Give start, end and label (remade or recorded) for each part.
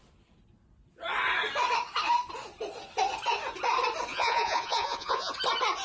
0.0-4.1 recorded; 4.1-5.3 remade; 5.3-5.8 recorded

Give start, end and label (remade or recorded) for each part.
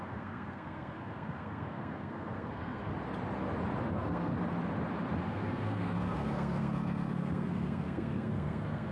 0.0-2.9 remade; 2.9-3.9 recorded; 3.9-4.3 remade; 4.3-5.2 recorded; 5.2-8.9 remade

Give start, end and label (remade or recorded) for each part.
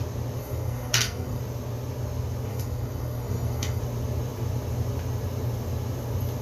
0.0-0.4 recorded; 0.4-1.4 remade; 1.4-2.5 recorded; 2.5-3.8 remade; 3.8-6.4 recorded